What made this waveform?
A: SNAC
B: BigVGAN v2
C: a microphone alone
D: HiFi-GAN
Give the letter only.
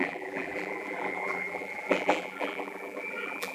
B